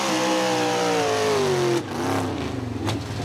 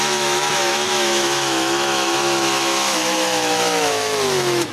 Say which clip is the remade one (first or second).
second